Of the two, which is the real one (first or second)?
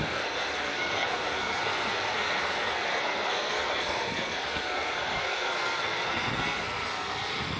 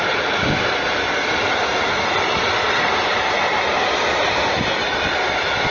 second